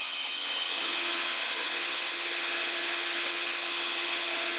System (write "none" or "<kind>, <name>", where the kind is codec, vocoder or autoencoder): vocoder, HiFi-GAN